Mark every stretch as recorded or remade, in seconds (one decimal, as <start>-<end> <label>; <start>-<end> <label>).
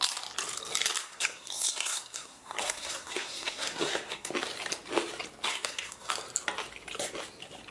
0.0-1.0 recorded; 1.0-4.3 remade; 4.3-5.5 recorded; 5.5-6.1 remade; 6.1-7.7 recorded